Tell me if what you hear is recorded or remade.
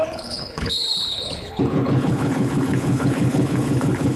remade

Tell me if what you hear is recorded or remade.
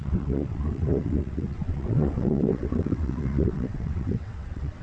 remade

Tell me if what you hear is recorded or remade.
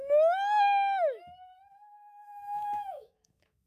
remade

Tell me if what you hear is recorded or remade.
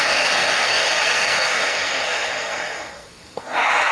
remade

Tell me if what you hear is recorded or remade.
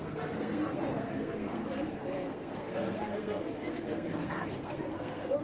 remade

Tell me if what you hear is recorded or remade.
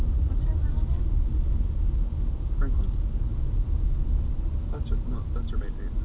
recorded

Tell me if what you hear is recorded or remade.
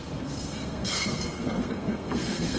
remade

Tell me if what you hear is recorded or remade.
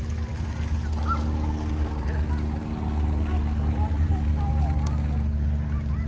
recorded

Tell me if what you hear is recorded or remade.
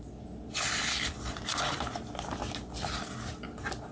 recorded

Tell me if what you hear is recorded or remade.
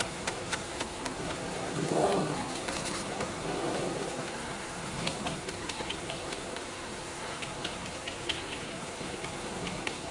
remade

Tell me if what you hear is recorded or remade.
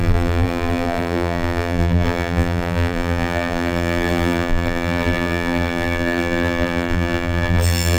remade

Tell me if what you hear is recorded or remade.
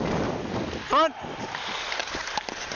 recorded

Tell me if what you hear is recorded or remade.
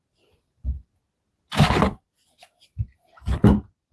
recorded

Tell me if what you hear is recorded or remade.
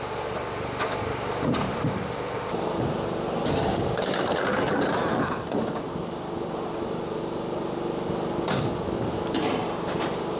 remade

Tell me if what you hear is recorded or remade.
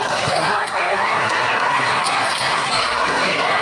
remade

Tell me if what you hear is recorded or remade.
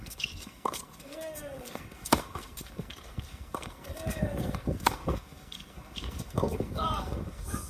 remade